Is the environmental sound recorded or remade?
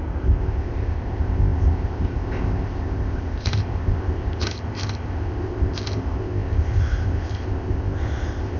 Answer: remade